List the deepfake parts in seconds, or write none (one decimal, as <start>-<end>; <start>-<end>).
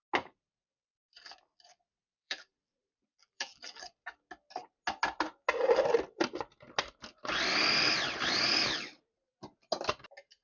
2.1-3.8